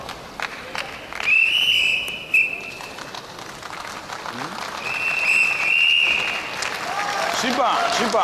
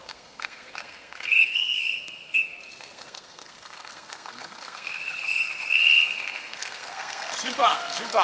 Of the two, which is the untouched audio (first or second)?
first